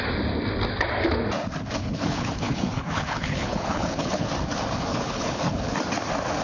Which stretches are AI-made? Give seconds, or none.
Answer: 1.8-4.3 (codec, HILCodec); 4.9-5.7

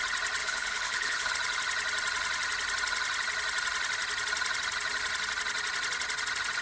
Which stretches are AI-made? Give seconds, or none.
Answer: 0.4-1.3 (codec, HILCodec)

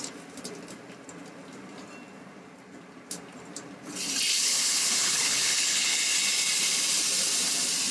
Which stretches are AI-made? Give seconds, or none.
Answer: 4.3-6.0 (codec, HILCodec)